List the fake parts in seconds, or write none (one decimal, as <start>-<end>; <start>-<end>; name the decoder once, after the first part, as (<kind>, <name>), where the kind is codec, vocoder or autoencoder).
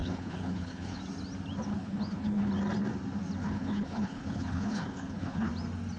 0.0-1.0 (codec, HILCodec); 1.7-2.5; 3.4-5.5